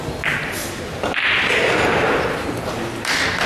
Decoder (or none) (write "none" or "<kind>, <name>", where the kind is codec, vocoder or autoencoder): none